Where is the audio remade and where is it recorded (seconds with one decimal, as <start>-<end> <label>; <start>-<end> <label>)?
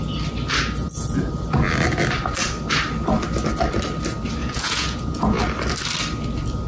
0.0-0.8 recorded; 0.8-1.3 remade; 1.3-4.4 recorded; 4.4-5.4 remade; 5.4-6.7 recorded